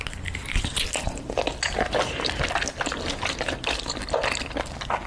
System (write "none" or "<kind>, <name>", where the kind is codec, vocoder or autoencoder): none